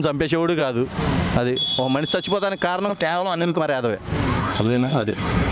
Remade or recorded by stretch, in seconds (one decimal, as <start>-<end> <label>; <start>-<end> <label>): 0.0-2.9 recorded; 2.9-3.6 remade; 3.6-4.4 recorded; 4.4-5.5 remade